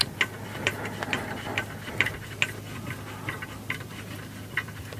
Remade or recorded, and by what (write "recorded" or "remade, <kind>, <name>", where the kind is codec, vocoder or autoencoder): recorded